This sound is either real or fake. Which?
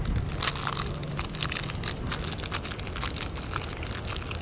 real